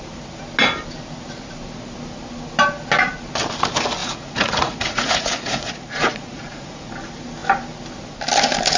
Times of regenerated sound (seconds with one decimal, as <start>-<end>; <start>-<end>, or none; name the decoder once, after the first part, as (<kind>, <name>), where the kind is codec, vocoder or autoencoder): 4.0-6.9 (vocoder, Vocos)